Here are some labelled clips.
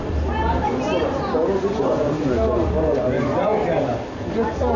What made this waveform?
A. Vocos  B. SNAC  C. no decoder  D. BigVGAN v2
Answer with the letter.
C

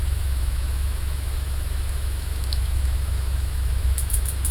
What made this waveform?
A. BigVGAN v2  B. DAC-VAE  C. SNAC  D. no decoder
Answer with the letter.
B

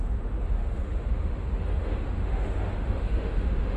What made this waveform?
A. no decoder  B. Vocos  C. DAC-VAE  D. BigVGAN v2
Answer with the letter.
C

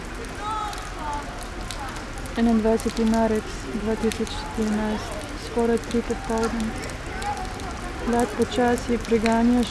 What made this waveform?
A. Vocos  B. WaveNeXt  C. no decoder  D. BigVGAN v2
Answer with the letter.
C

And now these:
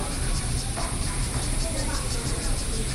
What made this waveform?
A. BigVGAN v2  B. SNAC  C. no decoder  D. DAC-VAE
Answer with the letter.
A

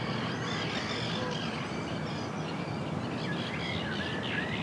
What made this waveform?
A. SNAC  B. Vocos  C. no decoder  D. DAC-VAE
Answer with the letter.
C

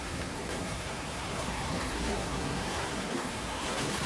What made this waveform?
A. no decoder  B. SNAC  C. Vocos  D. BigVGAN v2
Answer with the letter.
B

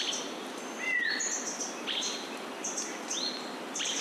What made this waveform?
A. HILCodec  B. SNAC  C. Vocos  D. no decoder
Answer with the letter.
D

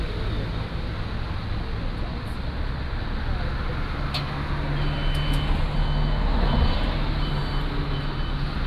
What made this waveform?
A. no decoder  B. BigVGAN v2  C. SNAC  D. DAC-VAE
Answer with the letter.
A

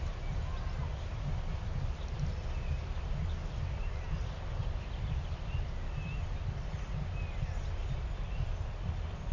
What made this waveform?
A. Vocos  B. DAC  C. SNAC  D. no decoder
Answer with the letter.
D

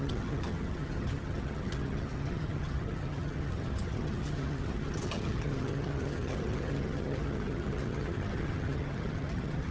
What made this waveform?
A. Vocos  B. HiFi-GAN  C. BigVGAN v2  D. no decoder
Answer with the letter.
B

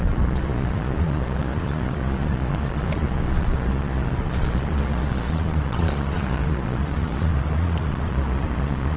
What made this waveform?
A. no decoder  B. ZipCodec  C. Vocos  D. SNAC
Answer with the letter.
C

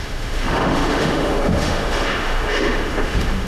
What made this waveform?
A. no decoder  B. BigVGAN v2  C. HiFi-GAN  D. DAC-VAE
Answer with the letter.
D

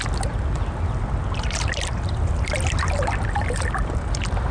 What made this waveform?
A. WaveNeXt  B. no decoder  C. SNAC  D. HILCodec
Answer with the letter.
B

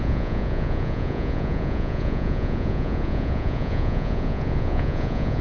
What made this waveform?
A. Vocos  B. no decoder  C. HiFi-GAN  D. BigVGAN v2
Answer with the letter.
A